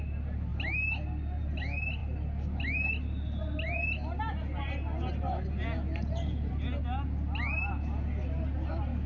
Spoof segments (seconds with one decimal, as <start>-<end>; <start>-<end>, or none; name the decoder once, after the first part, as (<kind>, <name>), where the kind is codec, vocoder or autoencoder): none